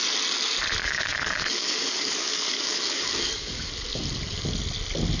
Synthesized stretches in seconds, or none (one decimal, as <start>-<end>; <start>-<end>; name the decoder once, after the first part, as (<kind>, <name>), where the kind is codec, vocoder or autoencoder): 0.8-3.7 (codec, DAC)